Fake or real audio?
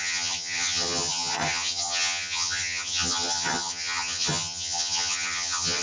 fake